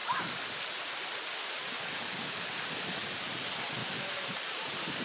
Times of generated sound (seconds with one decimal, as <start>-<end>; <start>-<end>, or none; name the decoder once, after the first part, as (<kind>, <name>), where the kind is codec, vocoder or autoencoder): 0.0-0.9 (vocoder, BigVGAN v2); 3.8-5.0